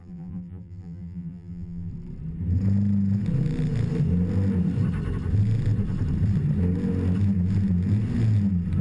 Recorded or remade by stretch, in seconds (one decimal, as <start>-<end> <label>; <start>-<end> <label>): 0.0-1.9 remade; 1.9-8.8 recorded